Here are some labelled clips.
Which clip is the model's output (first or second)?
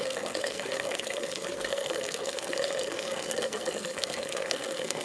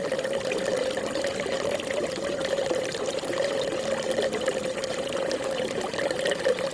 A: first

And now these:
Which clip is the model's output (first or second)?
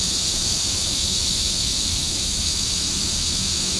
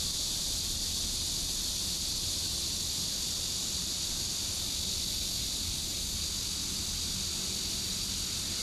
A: first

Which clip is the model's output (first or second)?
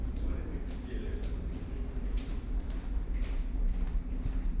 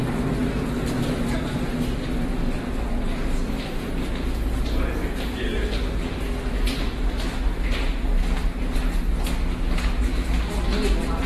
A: first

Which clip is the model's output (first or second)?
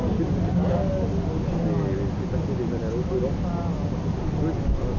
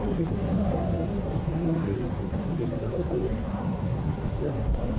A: second